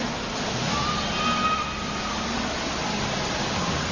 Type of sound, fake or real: real